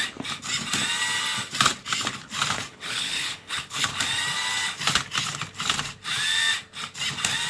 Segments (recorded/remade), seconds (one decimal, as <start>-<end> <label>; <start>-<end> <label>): 0.0-2.7 recorded; 2.7-4.0 remade; 4.0-7.5 recorded